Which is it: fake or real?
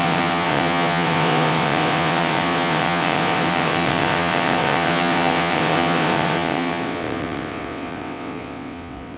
fake